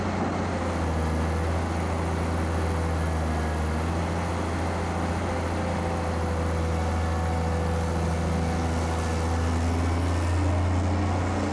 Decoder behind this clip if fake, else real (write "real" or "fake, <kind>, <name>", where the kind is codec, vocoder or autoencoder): real